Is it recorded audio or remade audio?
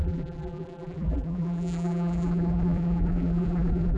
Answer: remade